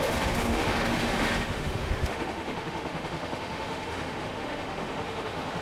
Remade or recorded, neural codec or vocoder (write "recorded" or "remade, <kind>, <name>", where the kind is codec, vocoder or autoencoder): remade, autoencoder, DAC-VAE